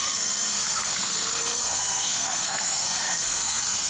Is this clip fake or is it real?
fake